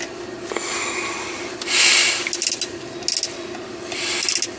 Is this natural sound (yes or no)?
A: yes